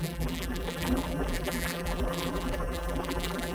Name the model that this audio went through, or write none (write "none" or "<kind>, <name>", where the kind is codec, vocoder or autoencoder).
vocoder, BigVGAN v2